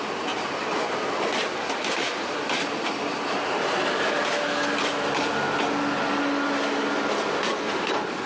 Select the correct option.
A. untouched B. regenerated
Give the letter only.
A